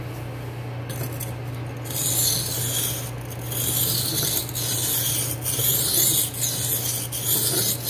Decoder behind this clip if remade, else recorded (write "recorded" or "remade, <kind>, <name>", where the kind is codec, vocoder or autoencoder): recorded